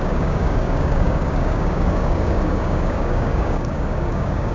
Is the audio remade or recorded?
remade